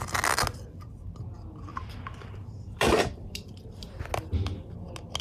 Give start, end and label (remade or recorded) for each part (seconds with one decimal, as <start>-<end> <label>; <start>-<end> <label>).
0.0-1.7 recorded; 1.7-3.6 remade; 3.6-5.2 recorded